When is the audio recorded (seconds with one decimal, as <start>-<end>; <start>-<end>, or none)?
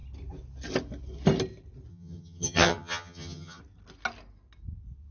0.0-1.9; 3.6-5.1